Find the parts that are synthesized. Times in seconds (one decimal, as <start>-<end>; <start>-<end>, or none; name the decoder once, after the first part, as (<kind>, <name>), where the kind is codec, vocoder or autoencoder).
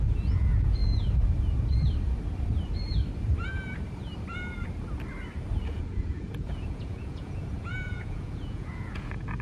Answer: 0.0-0.8 (vocoder, Vocos); 5.7-9.4